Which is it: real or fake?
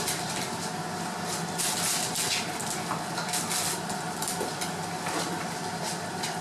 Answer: real